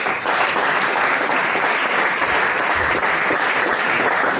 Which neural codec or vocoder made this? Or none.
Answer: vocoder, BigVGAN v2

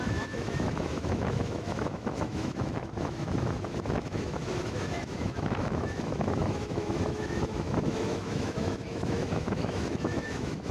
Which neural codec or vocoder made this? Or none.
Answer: autoencoder, DAC-VAE